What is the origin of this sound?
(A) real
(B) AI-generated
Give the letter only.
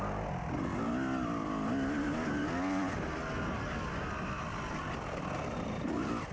A